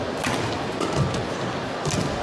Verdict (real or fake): real